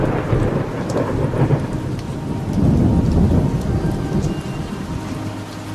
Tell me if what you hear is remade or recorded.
recorded